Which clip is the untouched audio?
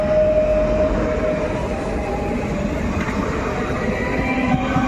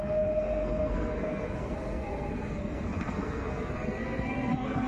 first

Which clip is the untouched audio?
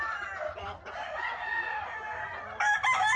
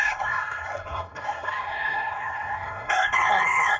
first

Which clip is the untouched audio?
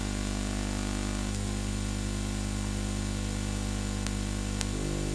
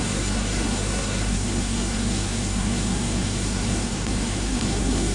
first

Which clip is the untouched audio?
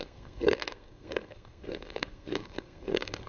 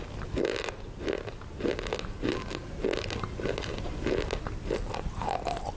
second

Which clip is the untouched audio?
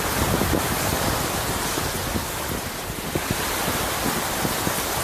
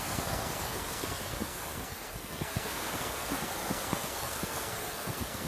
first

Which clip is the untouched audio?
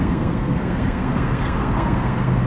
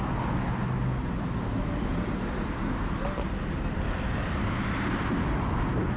second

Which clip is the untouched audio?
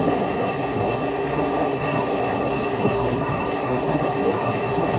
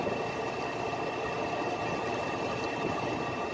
second